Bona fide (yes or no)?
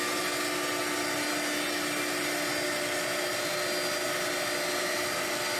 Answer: yes